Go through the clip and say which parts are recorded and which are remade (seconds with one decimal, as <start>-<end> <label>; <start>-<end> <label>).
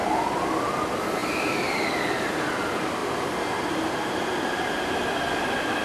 0.0-5.8 recorded